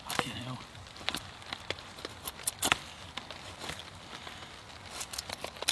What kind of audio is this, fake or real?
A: real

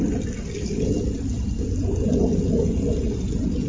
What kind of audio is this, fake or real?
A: real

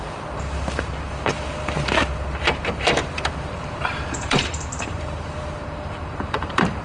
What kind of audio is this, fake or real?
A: fake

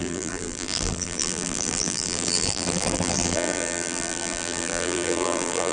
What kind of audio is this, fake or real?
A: fake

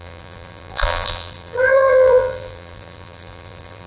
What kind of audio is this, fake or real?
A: fake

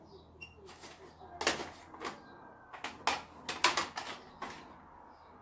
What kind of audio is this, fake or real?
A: real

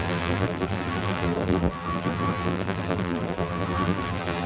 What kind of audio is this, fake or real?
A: fake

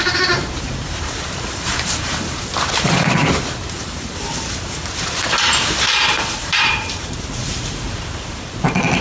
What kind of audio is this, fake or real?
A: fake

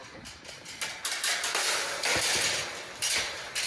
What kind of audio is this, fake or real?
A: real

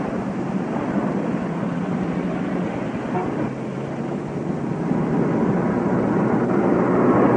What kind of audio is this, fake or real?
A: real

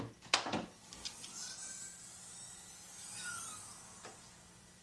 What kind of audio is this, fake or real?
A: real